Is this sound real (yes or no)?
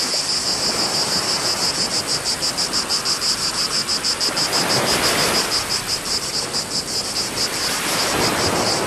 yes